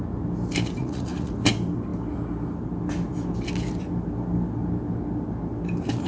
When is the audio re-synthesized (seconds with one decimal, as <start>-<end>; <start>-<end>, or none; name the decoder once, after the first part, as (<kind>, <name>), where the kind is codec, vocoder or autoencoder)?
0.8-1.3 (vocoder, Vocos)